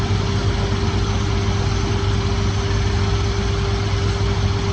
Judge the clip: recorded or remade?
recorded